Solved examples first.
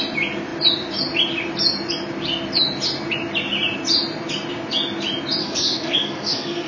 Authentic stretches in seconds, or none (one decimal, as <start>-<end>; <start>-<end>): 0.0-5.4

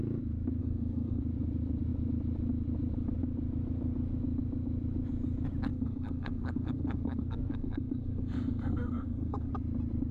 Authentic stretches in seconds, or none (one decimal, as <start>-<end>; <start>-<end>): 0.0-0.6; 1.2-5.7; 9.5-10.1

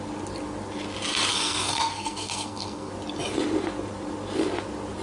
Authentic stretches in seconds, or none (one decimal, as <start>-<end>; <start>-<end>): 0.0-1.3; 2.9-5.0